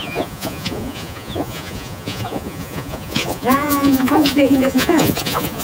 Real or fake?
fake